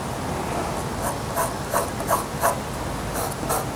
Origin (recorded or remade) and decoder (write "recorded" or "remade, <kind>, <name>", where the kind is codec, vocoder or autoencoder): recorded